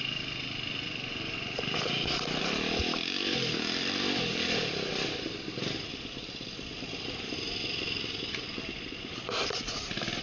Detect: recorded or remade recorded